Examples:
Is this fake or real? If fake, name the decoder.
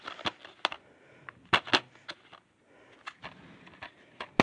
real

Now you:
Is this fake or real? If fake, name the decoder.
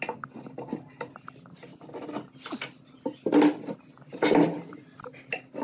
real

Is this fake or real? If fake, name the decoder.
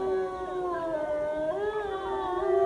real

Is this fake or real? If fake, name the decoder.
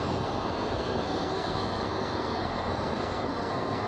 fake, codec, SNAC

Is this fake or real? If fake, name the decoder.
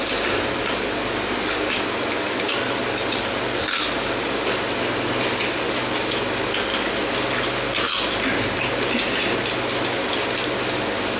real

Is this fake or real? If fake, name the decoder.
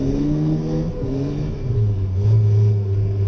fake, codec, SNAC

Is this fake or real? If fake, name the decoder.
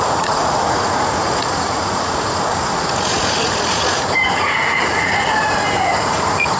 fake, vocoder, Vocos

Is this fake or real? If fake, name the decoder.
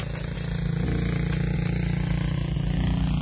real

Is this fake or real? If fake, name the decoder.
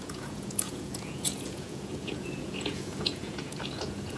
fake, vocoder, Vocos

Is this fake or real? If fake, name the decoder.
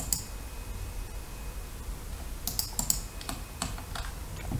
real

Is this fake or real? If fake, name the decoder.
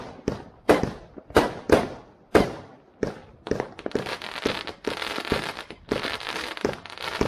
fake, vocoder, BigVGAN v2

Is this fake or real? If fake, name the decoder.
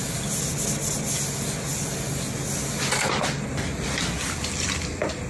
real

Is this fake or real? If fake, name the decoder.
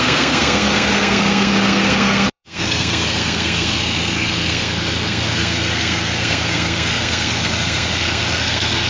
fake, codec, SNAC